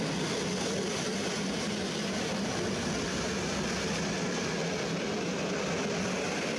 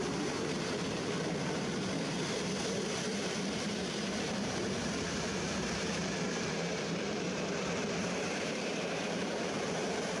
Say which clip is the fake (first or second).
second